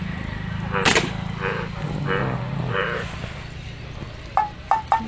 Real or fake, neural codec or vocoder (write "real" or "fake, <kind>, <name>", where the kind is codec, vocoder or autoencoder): real